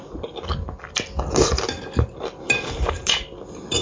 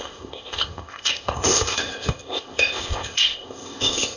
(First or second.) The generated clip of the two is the second